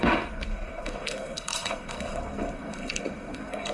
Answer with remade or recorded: remade